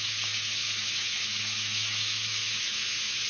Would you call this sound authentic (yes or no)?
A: no